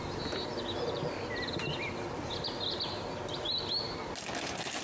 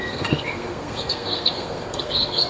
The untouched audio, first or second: first